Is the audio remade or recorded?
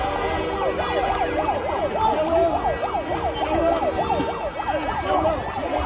recorded